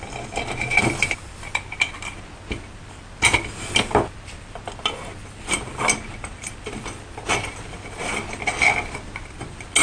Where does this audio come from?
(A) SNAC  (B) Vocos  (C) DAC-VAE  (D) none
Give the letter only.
D